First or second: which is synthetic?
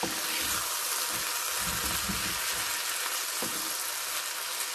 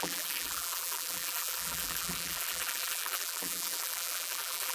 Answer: second